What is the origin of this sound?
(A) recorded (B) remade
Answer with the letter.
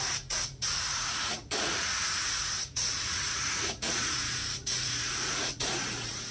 B